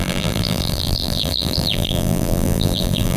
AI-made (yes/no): yes